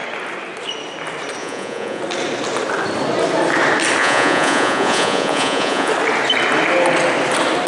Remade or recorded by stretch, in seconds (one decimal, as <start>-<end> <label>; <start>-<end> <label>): 0.0-1.4 recorded; 1.4-2.0 remade; 2.0-4.0 recorded; 4.0-5.9 remade; 5.9-7.7 recorded